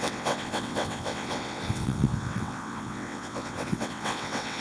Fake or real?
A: fake